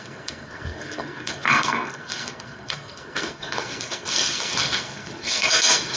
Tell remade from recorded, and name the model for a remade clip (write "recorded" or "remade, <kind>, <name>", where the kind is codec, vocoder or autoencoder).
remade, codec, SNAC